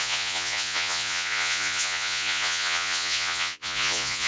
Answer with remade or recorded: remade